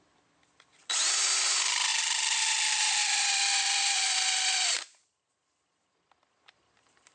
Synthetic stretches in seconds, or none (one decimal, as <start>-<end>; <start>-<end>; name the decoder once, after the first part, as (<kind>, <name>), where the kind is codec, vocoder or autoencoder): 1.9-4.2 (vocoder, BigVGAN v2)